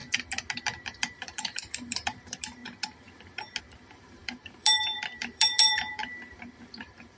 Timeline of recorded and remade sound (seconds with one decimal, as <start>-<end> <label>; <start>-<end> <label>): 0.0-0.6 recorded; 0.6-2.6 remade; 2.6-3.6 recorded; 3.6-6.0 remade; 6.0-6.7 recorded; 6.7-7.2 remade